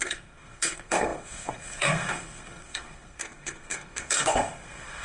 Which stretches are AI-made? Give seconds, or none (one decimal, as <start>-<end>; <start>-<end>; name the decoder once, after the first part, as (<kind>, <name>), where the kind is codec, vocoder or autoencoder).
0.0-5.0 (codec, SNAC)